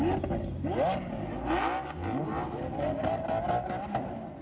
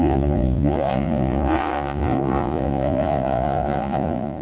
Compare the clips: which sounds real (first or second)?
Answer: first